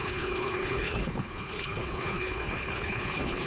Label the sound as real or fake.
fake